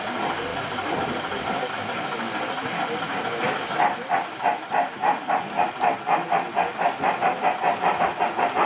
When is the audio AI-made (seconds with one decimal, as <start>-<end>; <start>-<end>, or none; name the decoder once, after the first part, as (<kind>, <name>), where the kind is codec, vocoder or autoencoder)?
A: 0.5-1.7 (vocoder, BigVGAN v2)